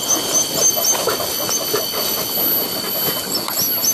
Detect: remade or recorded recorded